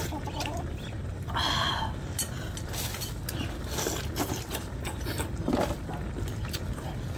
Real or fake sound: real